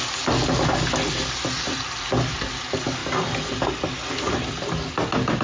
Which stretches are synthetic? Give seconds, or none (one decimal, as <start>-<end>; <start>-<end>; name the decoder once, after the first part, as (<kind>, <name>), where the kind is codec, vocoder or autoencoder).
none